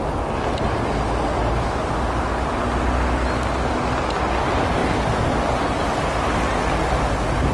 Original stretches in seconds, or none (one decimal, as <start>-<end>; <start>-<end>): 0.0-7.5